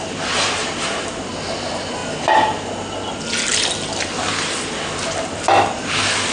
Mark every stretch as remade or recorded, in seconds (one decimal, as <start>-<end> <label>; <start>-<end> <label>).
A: 0.0-0.6 recorded; 0.6-1.3 remade; 1.3-6.3 recorded